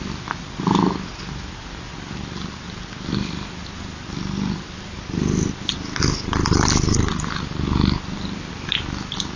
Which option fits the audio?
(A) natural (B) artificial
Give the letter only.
A